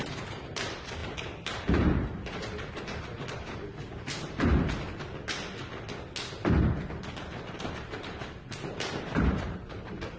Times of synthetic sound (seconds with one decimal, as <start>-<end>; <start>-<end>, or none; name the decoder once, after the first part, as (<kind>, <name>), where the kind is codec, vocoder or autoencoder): 0.0-1.0 (vocoder, BigVGAN v2); 1.7-4.9; 7.6-10.2